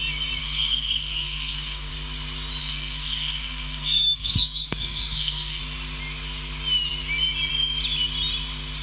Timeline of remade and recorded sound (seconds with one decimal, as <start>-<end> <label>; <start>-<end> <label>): 0.0-0.4 recorded; 0.4-1.9 remade; 1.9-2.6 recorded; 2.6-5.6 remade; 5.6-8.8 recorded